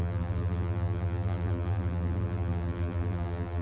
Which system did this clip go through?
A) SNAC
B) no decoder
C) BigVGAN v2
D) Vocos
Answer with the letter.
C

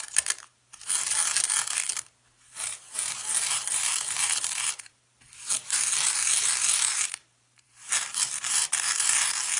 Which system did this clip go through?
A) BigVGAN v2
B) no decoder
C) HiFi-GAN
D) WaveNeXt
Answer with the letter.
A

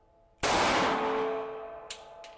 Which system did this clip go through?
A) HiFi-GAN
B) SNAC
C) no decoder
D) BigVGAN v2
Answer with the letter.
C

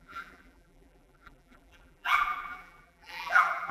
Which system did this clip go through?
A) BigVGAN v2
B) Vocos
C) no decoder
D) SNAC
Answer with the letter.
A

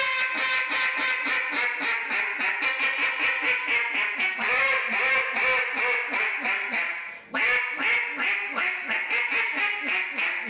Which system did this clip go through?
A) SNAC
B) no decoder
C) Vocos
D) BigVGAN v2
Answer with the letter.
B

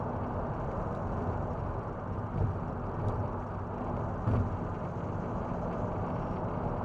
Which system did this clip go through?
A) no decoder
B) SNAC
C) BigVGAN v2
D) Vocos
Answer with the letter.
A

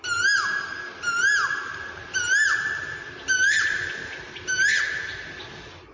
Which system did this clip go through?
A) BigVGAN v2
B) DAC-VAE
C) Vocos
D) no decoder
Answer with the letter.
D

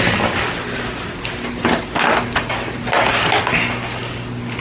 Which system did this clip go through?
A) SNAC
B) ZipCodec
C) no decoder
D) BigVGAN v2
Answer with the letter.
C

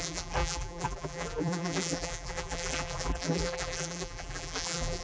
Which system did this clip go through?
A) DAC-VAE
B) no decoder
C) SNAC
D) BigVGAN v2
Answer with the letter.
D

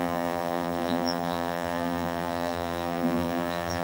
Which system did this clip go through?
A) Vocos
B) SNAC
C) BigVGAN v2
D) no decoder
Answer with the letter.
C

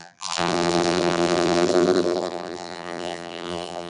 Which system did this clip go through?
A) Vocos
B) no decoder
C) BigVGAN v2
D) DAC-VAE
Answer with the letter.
C